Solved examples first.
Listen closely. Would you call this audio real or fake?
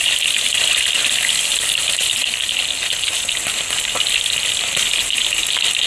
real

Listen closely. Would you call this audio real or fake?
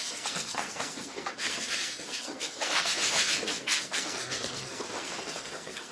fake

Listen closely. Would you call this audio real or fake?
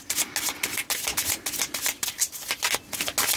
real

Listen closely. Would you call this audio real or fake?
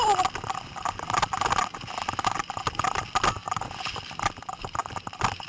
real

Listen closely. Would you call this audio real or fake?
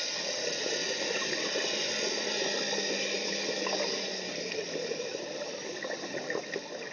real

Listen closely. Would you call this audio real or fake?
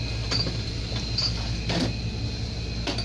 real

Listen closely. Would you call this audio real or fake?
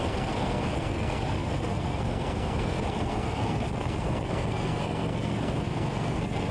fake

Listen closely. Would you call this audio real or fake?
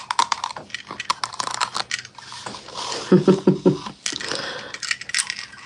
real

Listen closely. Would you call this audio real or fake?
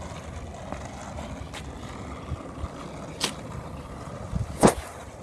real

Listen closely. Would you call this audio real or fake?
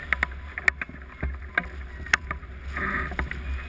real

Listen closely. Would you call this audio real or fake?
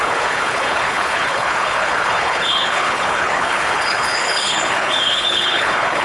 fake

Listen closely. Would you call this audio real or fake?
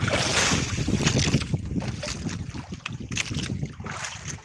real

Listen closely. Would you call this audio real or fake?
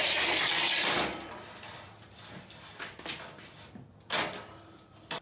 fake